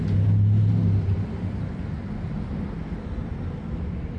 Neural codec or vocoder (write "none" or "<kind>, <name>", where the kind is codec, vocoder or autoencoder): none